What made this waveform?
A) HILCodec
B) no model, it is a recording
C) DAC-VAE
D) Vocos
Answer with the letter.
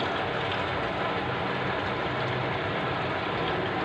B